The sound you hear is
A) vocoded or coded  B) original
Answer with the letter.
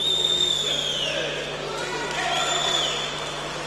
B